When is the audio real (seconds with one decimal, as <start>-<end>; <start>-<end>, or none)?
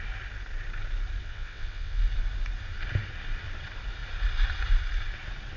0.0-1.2; 2.0-5.6